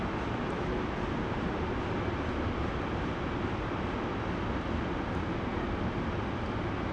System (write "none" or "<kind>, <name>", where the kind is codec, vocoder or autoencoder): none